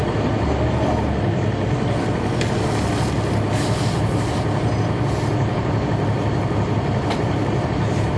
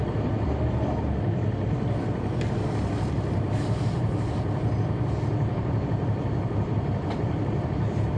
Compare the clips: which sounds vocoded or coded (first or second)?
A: second